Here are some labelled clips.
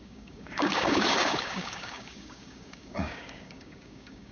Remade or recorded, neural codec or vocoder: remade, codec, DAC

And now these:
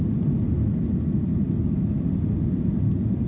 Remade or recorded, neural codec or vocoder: recorded